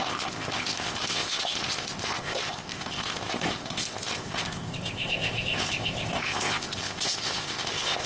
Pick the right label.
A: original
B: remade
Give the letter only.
B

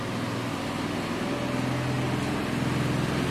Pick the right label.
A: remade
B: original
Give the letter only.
B